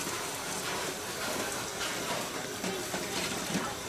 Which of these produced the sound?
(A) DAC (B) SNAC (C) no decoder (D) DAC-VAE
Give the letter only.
C